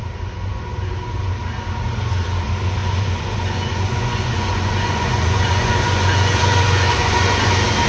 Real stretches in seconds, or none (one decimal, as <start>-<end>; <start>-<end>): 0.0-2.8; 7.5-7.9